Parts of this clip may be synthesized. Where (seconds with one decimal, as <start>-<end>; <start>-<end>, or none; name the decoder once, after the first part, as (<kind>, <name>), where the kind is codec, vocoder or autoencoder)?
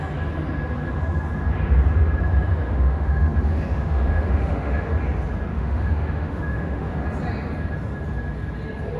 2.5-4.9 (autoencoder, DAC-VAE); 5.5-6.9